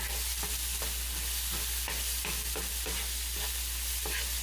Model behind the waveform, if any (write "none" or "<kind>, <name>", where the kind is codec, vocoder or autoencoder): none